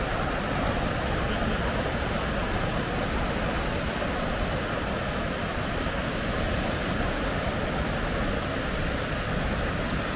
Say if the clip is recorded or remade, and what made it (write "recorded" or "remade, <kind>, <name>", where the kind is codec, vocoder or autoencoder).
recorded